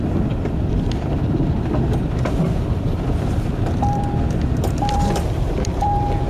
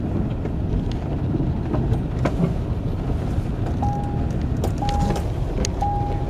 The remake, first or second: first